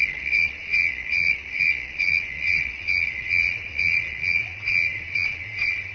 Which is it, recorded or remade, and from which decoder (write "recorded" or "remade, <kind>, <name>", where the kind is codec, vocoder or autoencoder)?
remade, vocoder, Vocos